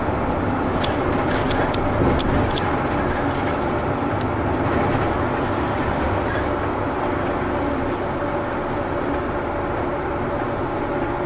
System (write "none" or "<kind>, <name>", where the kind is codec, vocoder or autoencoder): none